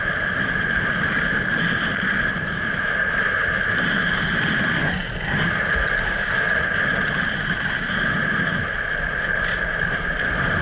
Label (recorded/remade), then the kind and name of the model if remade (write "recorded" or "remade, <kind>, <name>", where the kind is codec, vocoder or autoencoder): recorded